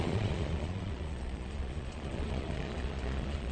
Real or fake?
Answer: fake